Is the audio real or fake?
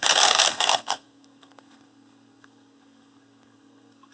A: fake